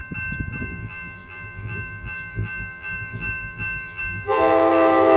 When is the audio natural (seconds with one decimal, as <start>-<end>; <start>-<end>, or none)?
0.0-0.6